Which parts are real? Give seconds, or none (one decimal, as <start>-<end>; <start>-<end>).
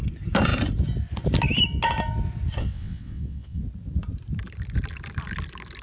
0.0-2.6; 3.6-5.8